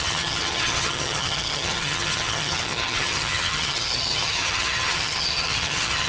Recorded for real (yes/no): no